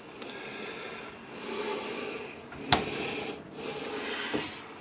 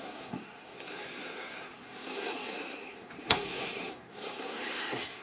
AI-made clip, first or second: second